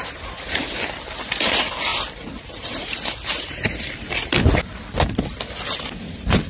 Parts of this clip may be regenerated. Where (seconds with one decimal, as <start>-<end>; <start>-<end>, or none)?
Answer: none